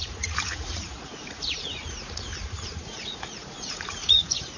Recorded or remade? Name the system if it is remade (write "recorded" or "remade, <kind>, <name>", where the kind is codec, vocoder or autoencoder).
remade, vocoder, Vocos